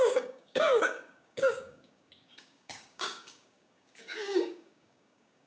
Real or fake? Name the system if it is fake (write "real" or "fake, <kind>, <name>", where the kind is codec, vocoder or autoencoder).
fake, codec, DAC